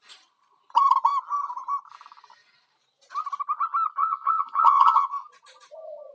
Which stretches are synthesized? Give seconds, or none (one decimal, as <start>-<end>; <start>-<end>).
4.0-5.1